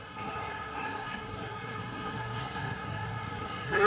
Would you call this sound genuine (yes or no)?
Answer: no